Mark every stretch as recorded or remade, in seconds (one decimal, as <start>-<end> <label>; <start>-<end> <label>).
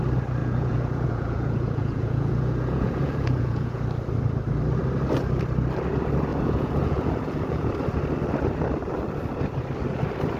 0.0-0.4 recorded; 0.4-3.8 remade; 3.8-6.3 recorded; 6.3-7.7 remade; 7.7-10.4 recorded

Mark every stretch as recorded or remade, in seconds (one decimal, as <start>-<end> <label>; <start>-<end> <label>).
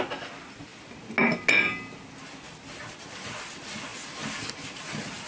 0.0-5.3 recorded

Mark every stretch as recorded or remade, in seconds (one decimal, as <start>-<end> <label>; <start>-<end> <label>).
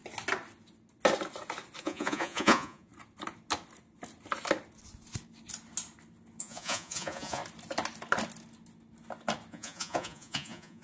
0.0-1.8 recorded; 1.8-2.9 remade; 2.9-6.4 recorded; 6.4-7.4 remade; 7.4-9.5 recorded; 9.5-10.8 remade